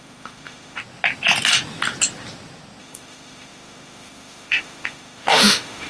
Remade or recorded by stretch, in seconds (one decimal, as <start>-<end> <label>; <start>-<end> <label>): 0.0-0.8 remade; 0.8-2.8 recorded; 2.8-5.9 remade